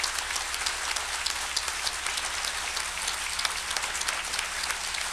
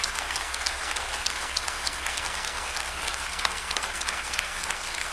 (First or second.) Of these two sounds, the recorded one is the first